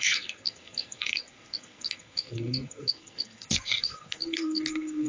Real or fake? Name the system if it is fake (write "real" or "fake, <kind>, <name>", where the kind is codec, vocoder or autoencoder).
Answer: fake, codec, SNAC